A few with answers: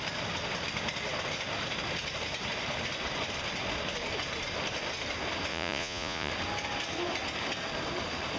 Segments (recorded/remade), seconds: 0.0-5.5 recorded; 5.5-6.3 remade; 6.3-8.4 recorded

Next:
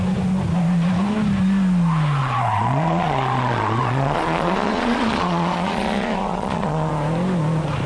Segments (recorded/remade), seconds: 0.0-2.2 recorded; 2.2-6.9 remade; 6.9-7.9 recorded

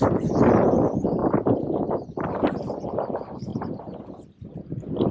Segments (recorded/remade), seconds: 0.0-5.1 recorded

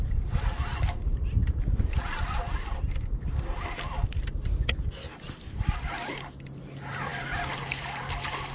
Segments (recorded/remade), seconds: 0.0-8.5 recorded

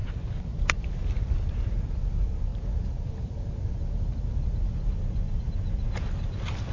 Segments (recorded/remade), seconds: 0.0-6.7 recorded

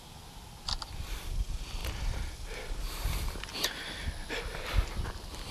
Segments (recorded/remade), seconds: 0.0-5.5 recorded

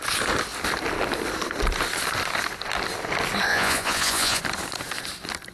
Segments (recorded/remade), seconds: 0.0-3.5 recorded; 3.5-4.4 remade; 4.4-5.5 recorded